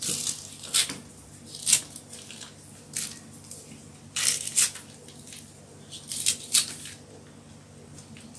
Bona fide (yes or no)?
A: yes